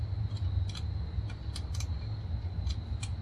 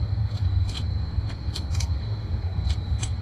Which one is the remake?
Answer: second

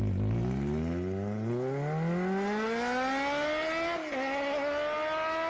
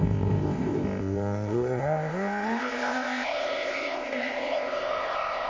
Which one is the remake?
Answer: second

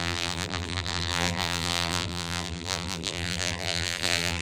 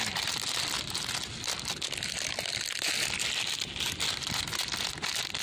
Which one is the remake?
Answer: first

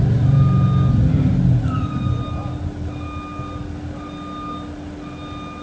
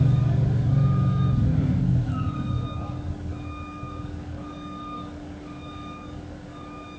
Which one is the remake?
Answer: second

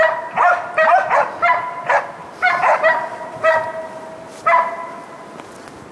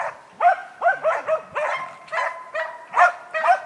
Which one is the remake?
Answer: second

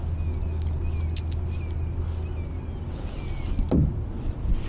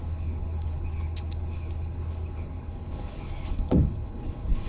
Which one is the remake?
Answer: second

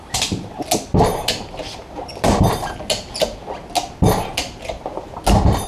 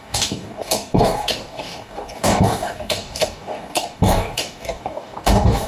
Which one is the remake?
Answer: second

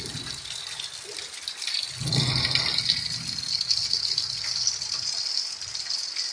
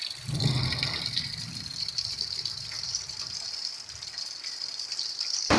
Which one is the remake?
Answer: second